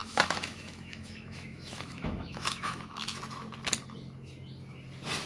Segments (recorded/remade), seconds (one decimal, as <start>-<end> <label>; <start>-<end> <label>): 0.0-3.2 remade; 3.2-5.3 recorded

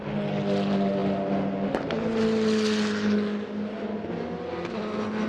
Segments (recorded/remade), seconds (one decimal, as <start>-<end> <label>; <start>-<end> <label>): 0.0-5.3 recorded

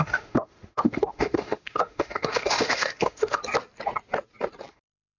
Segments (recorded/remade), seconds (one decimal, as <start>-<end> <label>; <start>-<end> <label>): 0.0-3.4 remade; 3.4-4.7 recorded; 4.7-5.2 remade

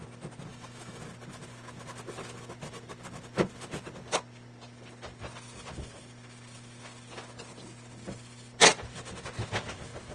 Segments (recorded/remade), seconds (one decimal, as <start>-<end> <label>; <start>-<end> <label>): 0.0-0.5 recorded; 0.5-1.0 remade; 1.0-10.1 recorded

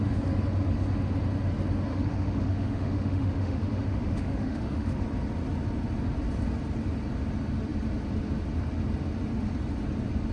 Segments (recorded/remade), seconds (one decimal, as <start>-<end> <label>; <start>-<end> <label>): 0.0-1.9 recorded; 1.9-5.0 remade; 5.0-10.3 recorded

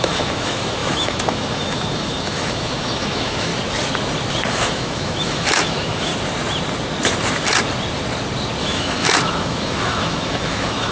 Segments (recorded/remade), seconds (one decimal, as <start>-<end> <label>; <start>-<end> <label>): 0.0-3.5 remade; 3.5-4.5 recorded; 4.5-6.1 remade; 6.1-8.6 recorded; 8.6-10.9 remade